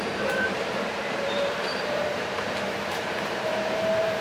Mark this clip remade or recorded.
remade